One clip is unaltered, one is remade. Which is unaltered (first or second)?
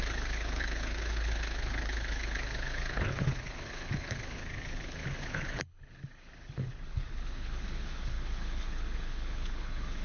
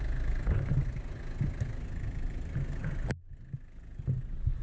second